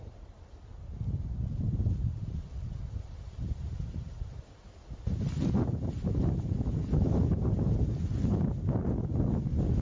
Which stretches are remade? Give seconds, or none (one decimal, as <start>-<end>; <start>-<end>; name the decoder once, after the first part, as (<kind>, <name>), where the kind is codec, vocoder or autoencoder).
none